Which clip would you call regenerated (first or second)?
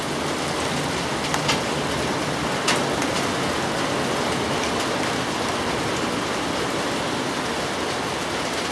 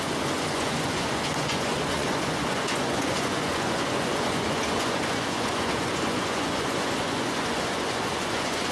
second